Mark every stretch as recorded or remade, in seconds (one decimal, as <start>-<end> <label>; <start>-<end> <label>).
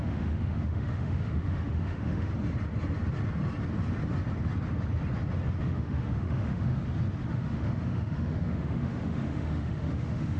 0.0-2.3 remade; 2.3-5.6 recorded; 5.6-6.8 remade; 6.8-7.3 recorded; 7.3-10.4 remade